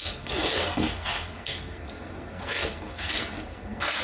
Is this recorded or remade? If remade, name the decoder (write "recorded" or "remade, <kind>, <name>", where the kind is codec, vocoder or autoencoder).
remade, codec, SNAC